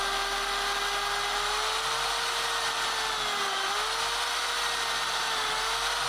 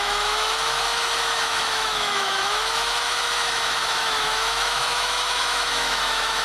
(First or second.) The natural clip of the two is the first